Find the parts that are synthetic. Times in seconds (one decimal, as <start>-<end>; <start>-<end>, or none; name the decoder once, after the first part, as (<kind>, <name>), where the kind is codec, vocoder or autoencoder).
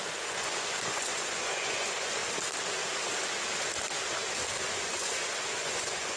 0.0-2.2 (vocoder, Vocos); 4.6-6.2